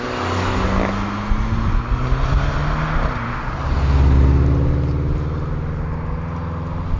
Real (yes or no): yes